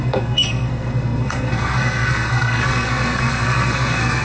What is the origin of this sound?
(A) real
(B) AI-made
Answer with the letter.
B